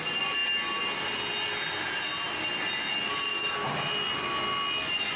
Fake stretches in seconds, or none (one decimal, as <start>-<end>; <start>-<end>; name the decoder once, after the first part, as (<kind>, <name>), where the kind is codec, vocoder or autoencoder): none